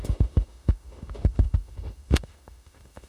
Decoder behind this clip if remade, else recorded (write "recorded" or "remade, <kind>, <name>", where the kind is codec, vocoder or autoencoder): remade, autoencoder, DAC-VAE